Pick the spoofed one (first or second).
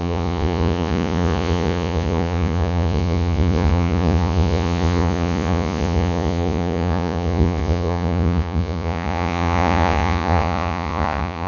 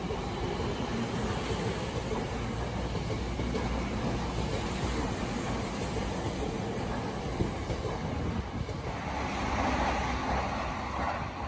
first